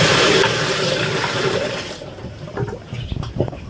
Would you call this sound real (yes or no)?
no